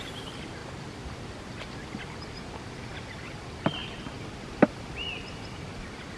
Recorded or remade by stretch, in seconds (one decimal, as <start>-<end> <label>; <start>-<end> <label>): 0.0-6.2 recorded